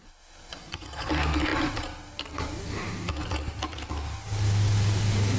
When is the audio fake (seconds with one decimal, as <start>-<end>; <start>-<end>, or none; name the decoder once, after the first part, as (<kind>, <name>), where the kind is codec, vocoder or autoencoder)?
0.5-1.1 (vocoder, Vocos)